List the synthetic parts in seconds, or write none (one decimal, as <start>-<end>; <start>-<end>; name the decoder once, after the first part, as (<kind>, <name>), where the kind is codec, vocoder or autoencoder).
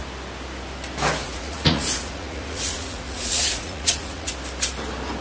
1.2-4.3 (vocoder, Vocos)